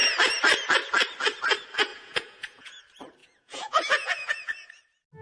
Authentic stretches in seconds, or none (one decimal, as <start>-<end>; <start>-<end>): 0.0-1.9; 2.8-3.2; 4.8-5.2